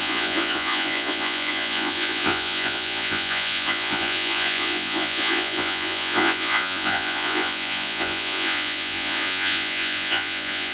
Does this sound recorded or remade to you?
remade